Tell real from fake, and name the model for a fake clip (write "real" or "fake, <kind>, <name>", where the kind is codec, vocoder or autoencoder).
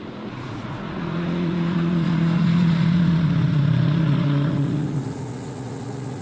fake, vocoder, Vocos